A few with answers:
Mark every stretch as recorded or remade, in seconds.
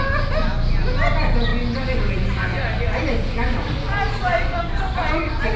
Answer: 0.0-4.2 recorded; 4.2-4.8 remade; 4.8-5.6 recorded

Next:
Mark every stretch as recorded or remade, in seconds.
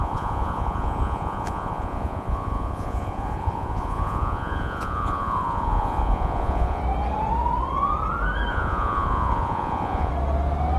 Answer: 0.0-6.8 remade; 6.8-8.5 recorded; 8.5-10.1 remade; 10.1-10.8 recorded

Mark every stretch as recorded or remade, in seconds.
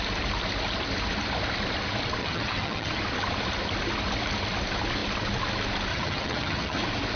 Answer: 0.0-2.2 recorded; 2.2-3.0 remade; 3.0-5.9 recorded; 5.9-6.8 remade; 6.8-7.2 recorded